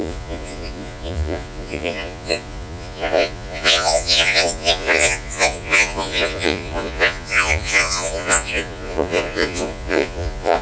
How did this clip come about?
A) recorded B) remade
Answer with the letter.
B